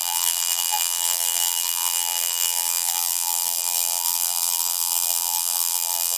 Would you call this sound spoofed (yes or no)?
yes